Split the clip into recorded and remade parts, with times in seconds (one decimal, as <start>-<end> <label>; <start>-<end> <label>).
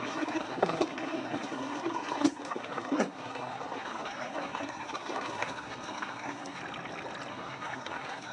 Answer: 0.0-6.6 remade; 6.6-7.3 recorded; 7.3-8.3 remade